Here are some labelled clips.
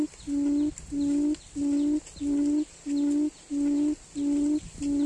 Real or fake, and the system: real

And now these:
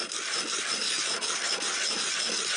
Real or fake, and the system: real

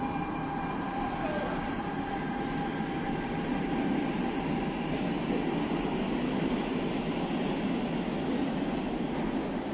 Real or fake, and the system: real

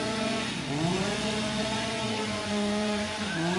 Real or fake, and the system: fake, vocoder, Vocos